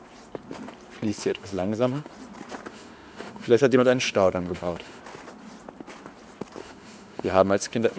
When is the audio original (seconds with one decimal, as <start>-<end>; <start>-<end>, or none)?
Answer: 0.0-1.1; 2.1-2.7; 5.0-6.6